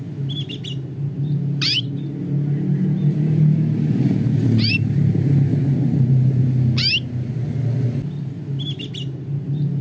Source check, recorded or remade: recorded